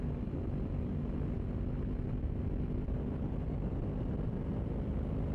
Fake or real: real